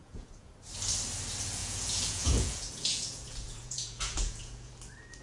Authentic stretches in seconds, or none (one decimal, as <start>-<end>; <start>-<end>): 0.5-1.6; 4.7-5.2